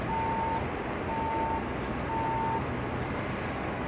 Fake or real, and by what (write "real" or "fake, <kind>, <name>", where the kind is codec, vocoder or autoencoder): real